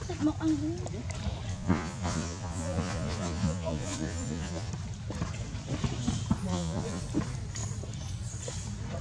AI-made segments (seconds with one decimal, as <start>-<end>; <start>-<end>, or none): 1.5-4.7; 6.5-7.0